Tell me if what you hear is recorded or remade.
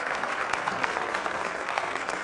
remade